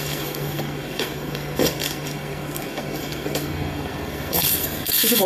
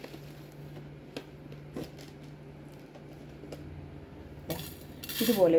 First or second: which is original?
second